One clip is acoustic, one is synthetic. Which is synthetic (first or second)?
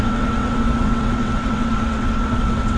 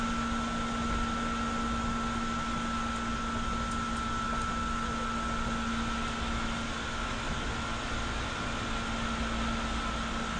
first